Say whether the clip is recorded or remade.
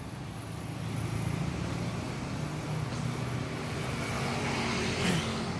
recorded